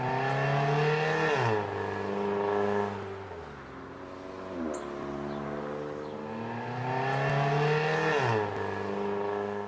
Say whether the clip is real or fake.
real